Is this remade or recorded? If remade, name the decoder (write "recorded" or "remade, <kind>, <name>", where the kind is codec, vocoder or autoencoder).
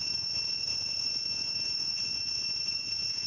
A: remade, vocoder, Vocos